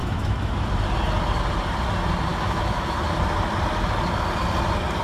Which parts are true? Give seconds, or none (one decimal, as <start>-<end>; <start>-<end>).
0.5-2.3; 3.0-5.0